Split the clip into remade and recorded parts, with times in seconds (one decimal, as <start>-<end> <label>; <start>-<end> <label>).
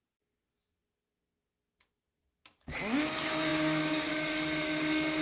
0.0-3.1 recorded; 3.1-5.2 remade